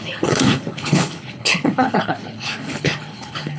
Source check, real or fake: fake